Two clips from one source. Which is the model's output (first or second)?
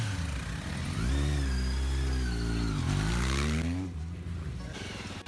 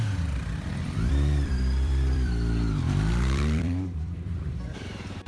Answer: second